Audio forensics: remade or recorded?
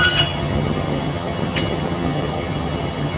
remade